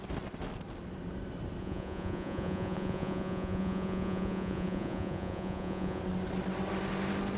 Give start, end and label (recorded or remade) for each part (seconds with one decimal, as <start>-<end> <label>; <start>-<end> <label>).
0.0-1.6 recorded; 1.6-6.0 remade; 6.0-7.4 recorded